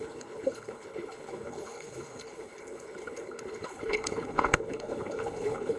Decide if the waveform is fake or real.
fake